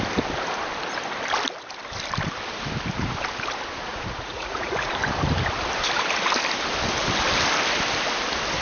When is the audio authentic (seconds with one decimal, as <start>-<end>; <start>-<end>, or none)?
0.0-3.9; 4.9-8.6